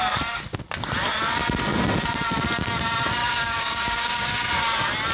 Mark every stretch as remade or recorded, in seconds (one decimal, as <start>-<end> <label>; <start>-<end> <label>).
0.0-3.2 recorded; 3.2-4.5 remade; 4.5-5.1 recorded